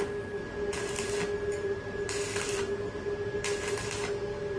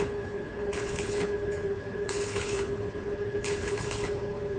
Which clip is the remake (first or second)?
second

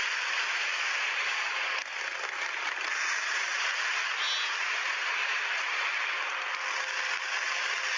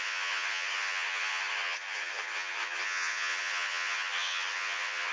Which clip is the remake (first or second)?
second